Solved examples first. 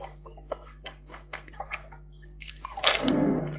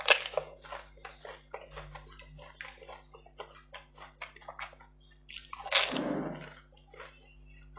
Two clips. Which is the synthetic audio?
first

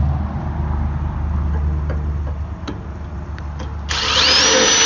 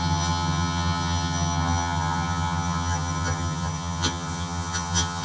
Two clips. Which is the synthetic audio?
second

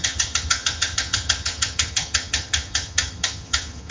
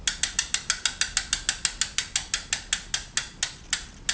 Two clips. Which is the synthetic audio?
first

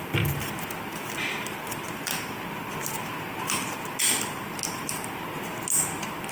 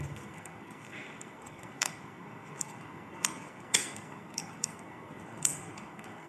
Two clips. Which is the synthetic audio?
second